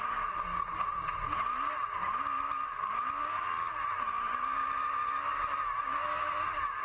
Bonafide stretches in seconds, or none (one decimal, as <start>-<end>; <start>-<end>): 0.0-6.8